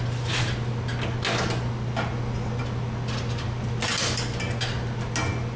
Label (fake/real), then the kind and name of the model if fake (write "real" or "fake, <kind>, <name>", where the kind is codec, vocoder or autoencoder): real